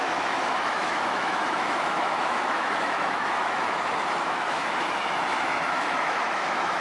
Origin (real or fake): fake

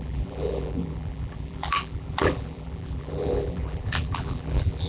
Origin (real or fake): fake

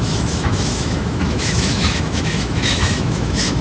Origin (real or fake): fake